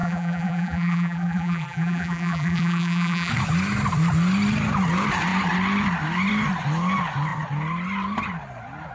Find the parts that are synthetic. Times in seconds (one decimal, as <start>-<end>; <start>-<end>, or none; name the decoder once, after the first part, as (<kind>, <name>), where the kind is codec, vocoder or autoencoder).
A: 0.0-3.3 (vocoder, BigVGAN v2)